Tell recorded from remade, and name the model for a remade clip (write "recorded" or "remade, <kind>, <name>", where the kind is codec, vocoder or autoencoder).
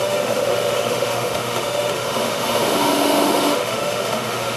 remade, autoencoder, DAC-VAE